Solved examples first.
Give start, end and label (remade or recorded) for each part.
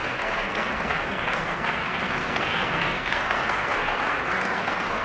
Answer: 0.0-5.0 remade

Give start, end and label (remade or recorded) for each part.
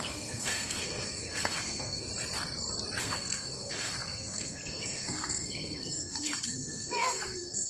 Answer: 0.0-2.1 remade; 2.1-3.0 recorded; 3.0-7.7 remade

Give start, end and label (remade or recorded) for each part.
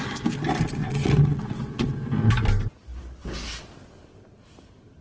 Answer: 0.0-0.8 recorded; 0.8-1.9 remade; 1.9-5.0 recorded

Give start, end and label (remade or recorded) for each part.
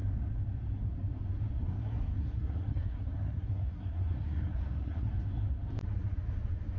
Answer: 0.0-1.6 recorded; 1.6-5.1 remade; 5.1-6.8 recorded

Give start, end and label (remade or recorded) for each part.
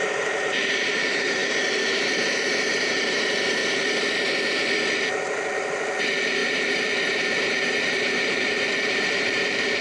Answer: 0.0-1.4 remade; 1.4-1.9 recorded; 1.9-3.6 remade; 3.6-6.0 recorded; 6.0-9.8 remade